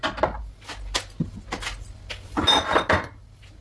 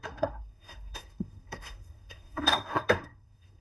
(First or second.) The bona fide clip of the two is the first